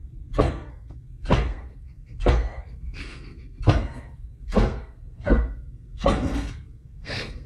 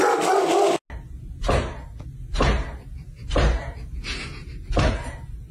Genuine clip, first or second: second